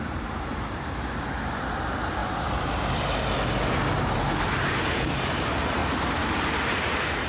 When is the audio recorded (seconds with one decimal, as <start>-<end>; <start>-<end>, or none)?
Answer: 2.2-3.7